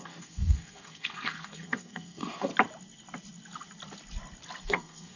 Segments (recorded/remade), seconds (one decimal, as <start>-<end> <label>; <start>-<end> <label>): 0.0-2.5 remade; 2.5-4.6 recorded; 4.6-5.2 remade